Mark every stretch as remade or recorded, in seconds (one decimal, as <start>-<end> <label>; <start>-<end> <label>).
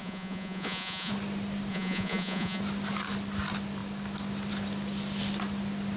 0.0-1.1 remade; 1.1-1.7 recorded; 1.7-2.6 remade; 2.6-6.0 recorded